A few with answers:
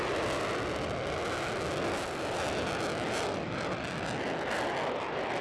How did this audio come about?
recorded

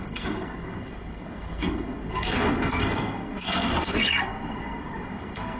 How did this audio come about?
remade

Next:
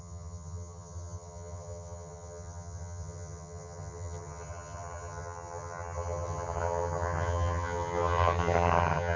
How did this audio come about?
remade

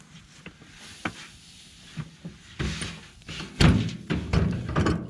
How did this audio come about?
recorded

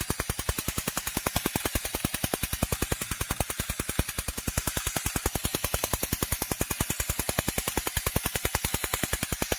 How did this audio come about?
recorded